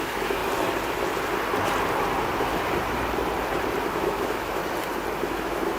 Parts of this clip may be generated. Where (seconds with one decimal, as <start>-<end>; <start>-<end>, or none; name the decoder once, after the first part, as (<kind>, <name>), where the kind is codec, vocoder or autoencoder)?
0.0-0.4 (autoencoder, DAC-VAE); 3.9-4.6; 5.2-5.8